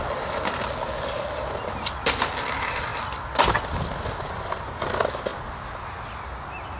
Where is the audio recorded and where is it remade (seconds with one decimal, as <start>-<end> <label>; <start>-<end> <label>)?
0.0-6.8 recorded